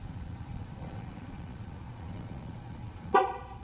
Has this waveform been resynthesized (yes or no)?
yes